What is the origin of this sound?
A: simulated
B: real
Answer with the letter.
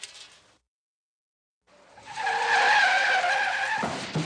B